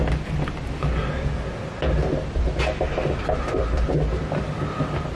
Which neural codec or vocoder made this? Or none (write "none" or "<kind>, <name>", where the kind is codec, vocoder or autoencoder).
none